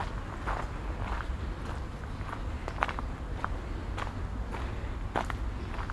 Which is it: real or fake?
real